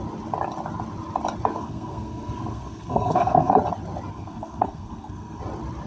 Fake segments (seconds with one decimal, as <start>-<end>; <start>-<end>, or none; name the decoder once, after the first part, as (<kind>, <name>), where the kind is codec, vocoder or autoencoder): 1.5-3.5 (codec, SNAC); 4.1-5.4